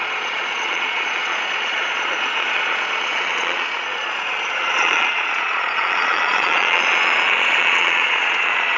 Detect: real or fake fake